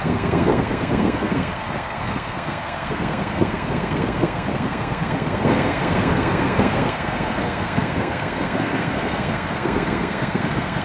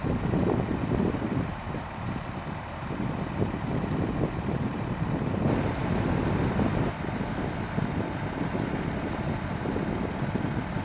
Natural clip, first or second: second